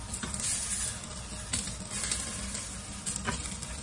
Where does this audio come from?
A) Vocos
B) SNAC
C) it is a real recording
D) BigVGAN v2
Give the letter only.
C